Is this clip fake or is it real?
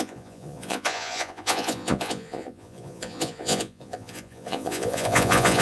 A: fake